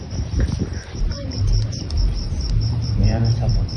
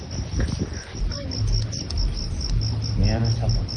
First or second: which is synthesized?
first